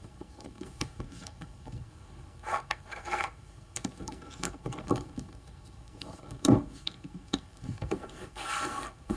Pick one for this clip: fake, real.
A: fake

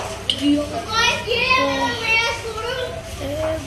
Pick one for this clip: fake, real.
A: real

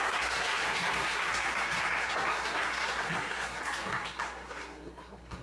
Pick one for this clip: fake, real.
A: fake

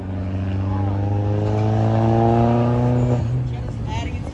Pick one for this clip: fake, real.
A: real